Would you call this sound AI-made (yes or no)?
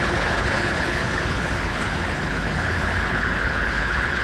yes